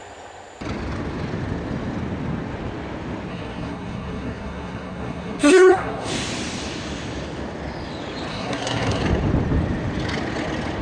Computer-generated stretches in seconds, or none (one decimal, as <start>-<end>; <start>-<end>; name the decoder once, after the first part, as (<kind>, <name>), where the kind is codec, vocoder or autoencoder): 3.3-6.1 (codec, SNAC); 8.3-9.0

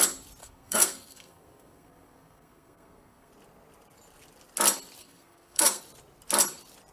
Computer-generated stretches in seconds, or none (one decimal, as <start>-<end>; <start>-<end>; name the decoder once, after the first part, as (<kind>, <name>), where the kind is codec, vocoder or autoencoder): 0.4-3.3 (codec, SNAC); 5.0-5.8